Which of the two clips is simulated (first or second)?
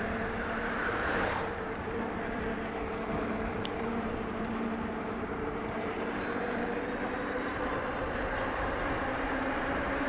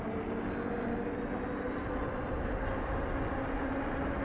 first